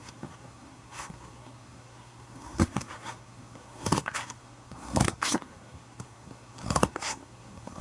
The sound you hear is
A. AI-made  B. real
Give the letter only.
A